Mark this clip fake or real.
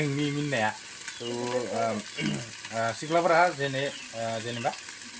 real